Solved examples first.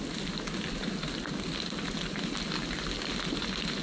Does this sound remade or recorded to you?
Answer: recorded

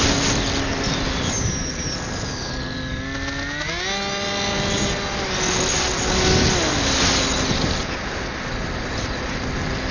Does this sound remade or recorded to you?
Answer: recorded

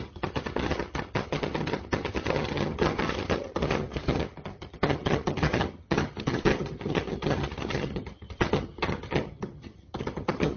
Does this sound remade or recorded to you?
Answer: remade